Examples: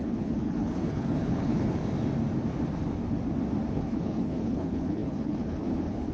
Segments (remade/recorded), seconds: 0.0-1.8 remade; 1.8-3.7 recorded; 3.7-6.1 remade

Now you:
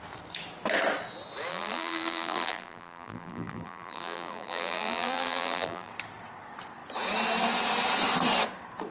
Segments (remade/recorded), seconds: 0.0-1.5 recorded; 1.5-5.9 remade; 5.9-8.9 recorded

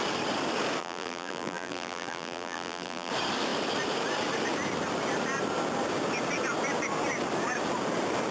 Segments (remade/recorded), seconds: 0.0-0.8 recorded; 0.8-3.1 remade; 3.1-8.3 recorded

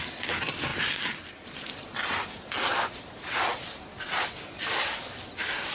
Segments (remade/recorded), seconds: 0.0-5.7 recorded

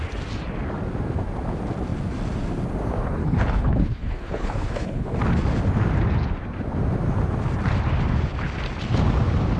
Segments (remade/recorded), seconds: 0.0-3.2 recorded; 3.2-5.2 remade; 5.2-9.6 recorded

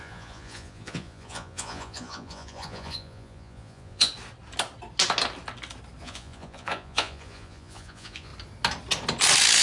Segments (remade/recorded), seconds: 0.0-4.1 remade; 4.1-6.0 recorded; 6.0-8.3 remade; 8.3-9.6 recorded

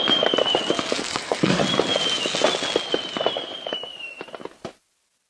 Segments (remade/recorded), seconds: 0.0-1.0 recorded; 1.0-1.6 remade; 1.6-5.3 recorded

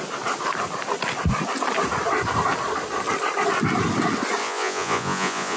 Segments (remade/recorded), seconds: 0.0-4.4 recorded; 4.4-5.6 remade